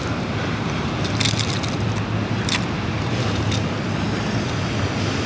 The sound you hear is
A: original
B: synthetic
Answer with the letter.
A